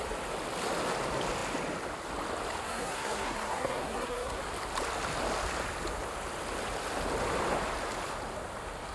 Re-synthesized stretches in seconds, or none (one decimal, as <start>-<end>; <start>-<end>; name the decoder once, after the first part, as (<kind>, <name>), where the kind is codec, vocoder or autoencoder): 2.6-4.4 (codec, SNAC)